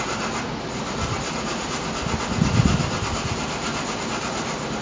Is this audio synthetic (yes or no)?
no